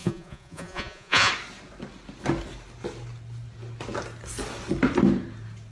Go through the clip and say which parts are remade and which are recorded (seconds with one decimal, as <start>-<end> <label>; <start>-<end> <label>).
0.0-1.3 remade; 1.3-5.7 recorded